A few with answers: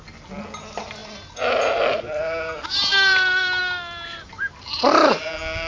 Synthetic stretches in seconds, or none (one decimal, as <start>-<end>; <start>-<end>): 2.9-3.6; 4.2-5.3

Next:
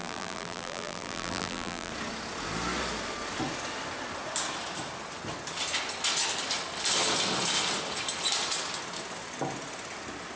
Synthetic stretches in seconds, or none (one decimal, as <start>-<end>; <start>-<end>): 0.0-1.9

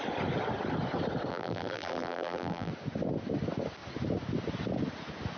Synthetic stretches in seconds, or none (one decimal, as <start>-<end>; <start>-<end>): 1.3-2.7